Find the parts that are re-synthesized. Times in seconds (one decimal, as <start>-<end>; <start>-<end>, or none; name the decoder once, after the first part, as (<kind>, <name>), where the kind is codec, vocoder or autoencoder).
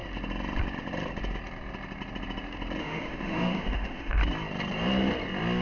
2.8-4.2 (autoencoder, DAC-VAE)